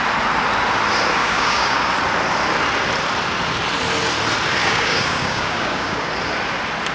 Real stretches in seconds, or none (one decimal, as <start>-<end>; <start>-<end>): 0.0-1.2; 1.9-4.6; 6.1-6.9